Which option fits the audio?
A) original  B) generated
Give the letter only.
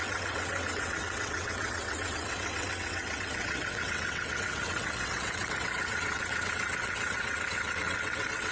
B